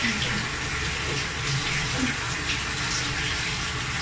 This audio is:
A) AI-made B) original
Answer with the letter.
B